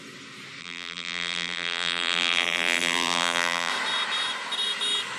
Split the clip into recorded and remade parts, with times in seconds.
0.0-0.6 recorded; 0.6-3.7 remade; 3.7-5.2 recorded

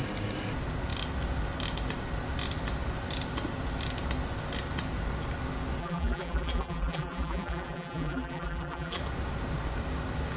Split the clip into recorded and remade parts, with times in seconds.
0.0-5.8 recorded; 5.8-9.0 remade; 9.0-10.4 recorded

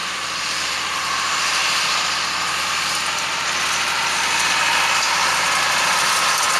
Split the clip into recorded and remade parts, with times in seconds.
0.0-1.0 remade; 1.0-6.6 recorded

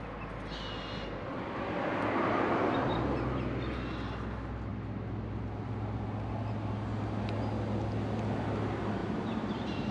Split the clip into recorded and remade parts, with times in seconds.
0.0-9.0 recorded; 9.0-9.9 remade

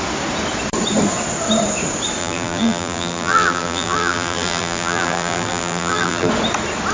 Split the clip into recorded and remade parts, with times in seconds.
0.0-2.2 recorded; 2.2-6.3 remade; 6.3-6.9 recorded

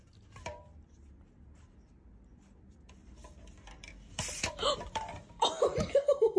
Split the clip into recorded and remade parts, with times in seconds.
0.0-3.0 recorded; 3.0-6.4 remade